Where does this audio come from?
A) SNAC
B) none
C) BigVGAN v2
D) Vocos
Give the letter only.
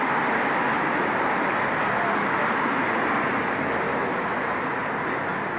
B